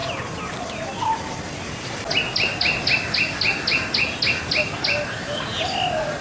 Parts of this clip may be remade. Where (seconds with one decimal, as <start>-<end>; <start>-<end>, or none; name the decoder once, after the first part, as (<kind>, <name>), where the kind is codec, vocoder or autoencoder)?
none

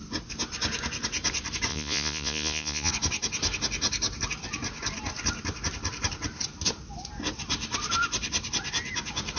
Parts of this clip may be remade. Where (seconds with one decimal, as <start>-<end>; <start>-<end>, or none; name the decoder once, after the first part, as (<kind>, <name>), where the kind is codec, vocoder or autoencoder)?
1.7-2.9 (vocoder, Vocos)

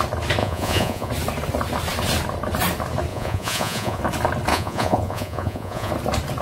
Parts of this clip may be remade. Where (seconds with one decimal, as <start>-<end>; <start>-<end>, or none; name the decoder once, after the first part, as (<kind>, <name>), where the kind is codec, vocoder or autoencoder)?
0.4-1.1 (vocoder, Vocos); 3.1-4.0; 4.5-5.9

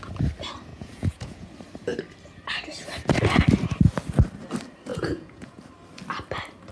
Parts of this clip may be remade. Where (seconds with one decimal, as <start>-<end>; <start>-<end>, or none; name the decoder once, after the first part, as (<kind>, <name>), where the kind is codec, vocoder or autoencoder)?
0.7-1.5 (vocoder, Vocos); 4.9-5.6

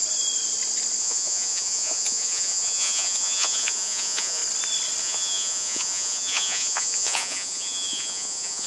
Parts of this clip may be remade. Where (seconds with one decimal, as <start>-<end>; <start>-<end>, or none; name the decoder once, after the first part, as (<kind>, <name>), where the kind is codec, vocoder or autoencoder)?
1.0-4.4 (vocoder, Vocos); 5.0-8.7

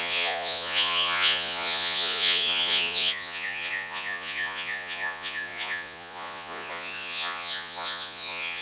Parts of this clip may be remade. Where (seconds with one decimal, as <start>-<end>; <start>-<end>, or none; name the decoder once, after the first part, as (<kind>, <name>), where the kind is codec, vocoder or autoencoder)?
0.0-8.6 (vocoder, Vocos)

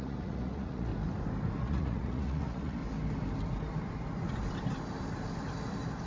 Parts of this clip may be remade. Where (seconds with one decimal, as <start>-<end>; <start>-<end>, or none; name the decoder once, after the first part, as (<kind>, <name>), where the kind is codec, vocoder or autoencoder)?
0.0-0.9 (vocoder, Vocos); 1.6-2.8